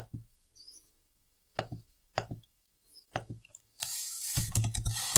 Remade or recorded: remade